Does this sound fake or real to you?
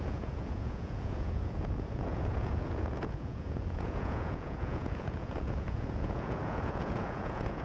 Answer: fake